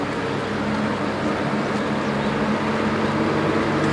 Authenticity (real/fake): real